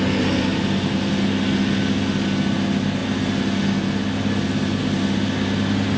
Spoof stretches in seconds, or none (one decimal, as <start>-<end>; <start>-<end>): 0.5-1.1